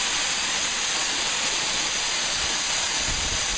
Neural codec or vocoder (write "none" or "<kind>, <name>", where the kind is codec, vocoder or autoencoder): vocoder, Vocos